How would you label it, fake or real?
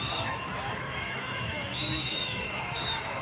fake